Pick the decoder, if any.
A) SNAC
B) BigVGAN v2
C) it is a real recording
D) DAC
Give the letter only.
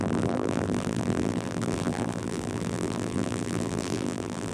B